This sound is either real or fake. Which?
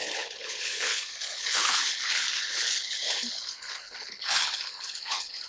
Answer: fake